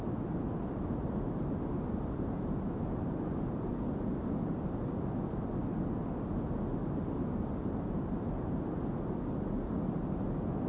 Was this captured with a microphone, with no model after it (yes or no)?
yes